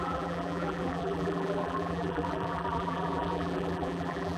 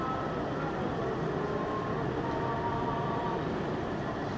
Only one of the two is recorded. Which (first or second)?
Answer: second